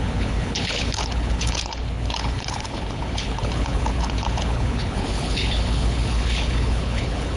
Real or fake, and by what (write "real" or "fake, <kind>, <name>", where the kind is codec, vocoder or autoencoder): fake, codec, HILCodec